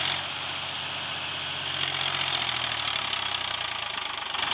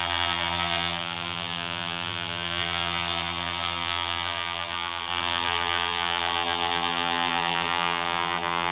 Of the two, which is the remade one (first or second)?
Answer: second